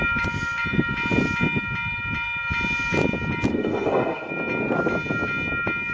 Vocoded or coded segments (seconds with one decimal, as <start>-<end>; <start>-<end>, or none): 3.5-4.3